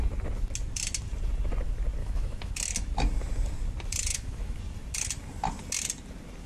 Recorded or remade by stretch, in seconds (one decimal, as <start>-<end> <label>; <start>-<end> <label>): 0.0-2.0 recorded; 2.0-2.5 remade; 2.5-4.1 recorded; 4.1-4.6 remade; 4.6-6.5 recorded